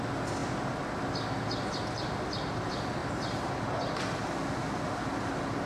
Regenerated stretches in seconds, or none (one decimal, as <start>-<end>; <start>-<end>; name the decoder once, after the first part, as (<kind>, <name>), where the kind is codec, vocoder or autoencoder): none